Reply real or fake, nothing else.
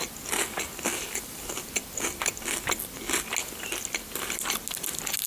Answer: real